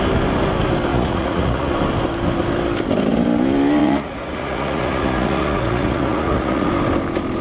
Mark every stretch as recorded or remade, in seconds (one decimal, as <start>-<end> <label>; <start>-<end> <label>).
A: 0.0-0.9 recorded; 0.9-1.7 remade; 1.7-3.8 recorded; 3.8-6.7 remade; 6.7-7.4 recorded